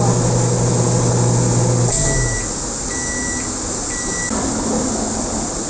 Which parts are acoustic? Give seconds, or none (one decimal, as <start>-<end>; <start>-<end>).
0.0-5.7